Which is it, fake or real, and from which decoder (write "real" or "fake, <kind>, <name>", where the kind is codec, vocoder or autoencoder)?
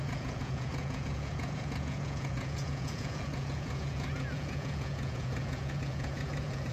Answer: fake, vocoder, Vocos